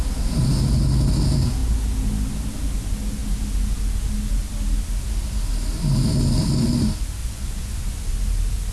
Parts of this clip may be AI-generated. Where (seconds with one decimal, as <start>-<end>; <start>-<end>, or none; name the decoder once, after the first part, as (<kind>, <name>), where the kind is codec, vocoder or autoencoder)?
7.2-8.1 (vocoder, Vocos)